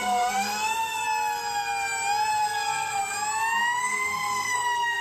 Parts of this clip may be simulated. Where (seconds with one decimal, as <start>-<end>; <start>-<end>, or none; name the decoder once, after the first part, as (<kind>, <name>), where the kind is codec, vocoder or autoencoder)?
0.0-1.0 (codec, SNAC); 2.3-3.0; 3.8-5.0